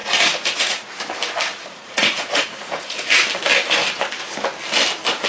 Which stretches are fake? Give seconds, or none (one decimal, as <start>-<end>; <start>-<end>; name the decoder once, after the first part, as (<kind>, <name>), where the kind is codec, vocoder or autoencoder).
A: 0.0-1.0 (vocoder, Vocos); 1.6-3.2